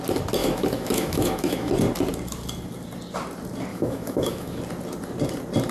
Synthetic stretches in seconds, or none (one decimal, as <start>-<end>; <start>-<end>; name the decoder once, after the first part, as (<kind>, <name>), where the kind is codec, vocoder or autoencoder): 0.4-1.7 (autoencoder, DAC-VAE); 3.7-4.6